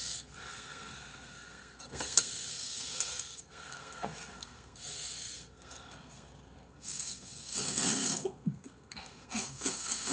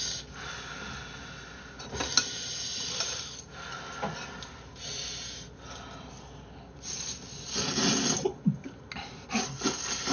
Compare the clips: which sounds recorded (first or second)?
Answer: second